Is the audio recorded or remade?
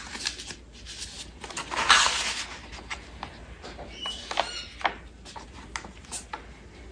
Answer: recorded